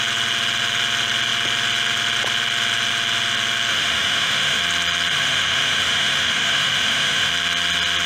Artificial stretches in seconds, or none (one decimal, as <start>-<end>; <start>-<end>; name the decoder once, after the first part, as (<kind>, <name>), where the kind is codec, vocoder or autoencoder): 3.7-4.6 (autoencoder, DAC-VAE); 5.1-7.3